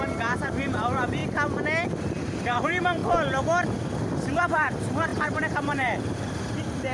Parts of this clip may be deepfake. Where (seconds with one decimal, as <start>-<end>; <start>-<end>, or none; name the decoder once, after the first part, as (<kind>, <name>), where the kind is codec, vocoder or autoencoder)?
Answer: 0.0-1.2 (vocoder, BigVGAN v2); 1.9-3.0; 4.3-6.9